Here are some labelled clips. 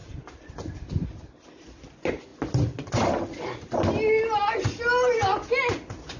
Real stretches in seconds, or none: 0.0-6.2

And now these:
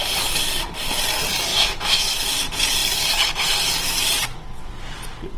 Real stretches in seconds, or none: 0.0-1.5; 2.3-5.4

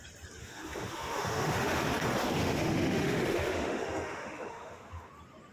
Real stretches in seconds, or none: 0.0-0.4; 1.8-2.4; 5.1-5.5

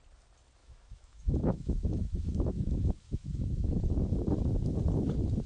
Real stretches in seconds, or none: 0.0-0.6; 3.9-5.5